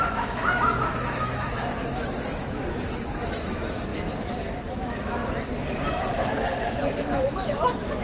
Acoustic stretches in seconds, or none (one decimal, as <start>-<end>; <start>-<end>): 2.6-3.2; 3.9-4.7; 5.2-5.9